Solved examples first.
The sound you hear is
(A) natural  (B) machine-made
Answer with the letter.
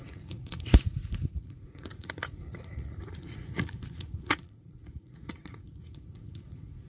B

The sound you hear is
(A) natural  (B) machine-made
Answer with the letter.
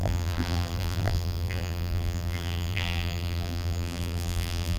B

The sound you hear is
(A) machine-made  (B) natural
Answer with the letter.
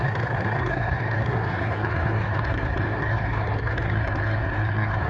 A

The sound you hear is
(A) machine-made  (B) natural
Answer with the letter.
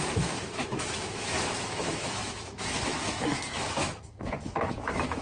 A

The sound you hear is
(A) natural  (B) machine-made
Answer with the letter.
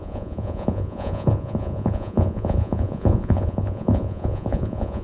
B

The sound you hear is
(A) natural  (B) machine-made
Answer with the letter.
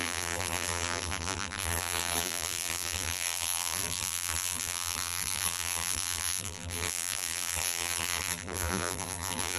B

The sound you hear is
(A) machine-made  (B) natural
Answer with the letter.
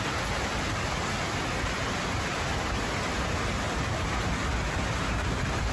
B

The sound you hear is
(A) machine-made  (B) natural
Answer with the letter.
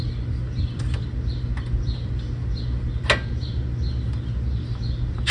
B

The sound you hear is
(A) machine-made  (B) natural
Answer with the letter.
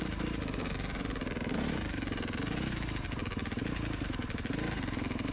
A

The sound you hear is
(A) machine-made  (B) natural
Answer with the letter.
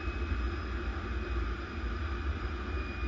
B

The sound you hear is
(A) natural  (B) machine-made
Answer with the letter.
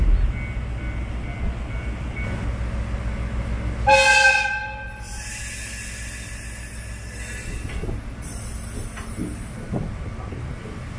A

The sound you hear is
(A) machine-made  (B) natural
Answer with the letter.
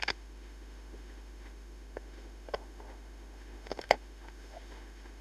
A